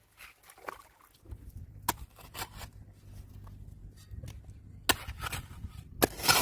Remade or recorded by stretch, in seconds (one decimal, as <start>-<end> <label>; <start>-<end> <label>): 0.0-6.4 recorded